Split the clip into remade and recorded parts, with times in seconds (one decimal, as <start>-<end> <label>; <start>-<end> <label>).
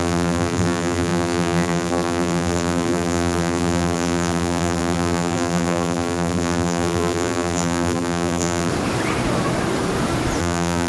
0.0-8.7 remade; 8.7-10.4 recorded; 10.4-10.9 remade